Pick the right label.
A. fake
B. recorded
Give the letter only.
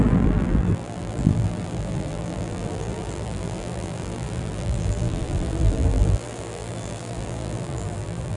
A